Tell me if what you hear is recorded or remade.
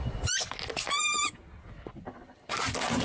recorded